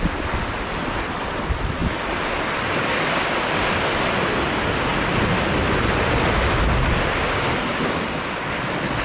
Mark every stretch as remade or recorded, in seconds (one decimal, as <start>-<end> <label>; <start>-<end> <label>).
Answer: 0.0-9.0 recorded